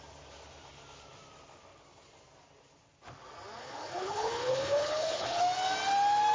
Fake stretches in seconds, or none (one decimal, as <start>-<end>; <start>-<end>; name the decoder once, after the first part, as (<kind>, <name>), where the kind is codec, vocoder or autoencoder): 3.6-5.4 (codec, HILCodec)